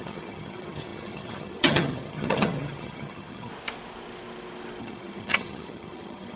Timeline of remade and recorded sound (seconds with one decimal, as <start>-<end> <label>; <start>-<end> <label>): 0.0-3.5 remade; 3.5-4.8 recorded; 4.8-6.4 remade